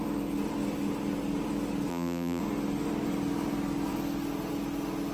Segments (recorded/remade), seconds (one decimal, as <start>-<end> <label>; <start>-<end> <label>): 0.0-1.9 recorded; 1.9-2.4 remade; 2.4-5.1 recorded